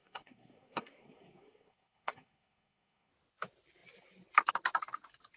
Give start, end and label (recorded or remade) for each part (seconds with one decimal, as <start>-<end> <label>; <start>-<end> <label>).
0.0-3.1 remade; 3.1-5.4 recorded